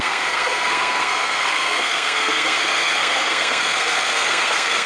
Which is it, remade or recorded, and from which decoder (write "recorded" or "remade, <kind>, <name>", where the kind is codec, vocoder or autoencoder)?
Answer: remade, codec, SNAC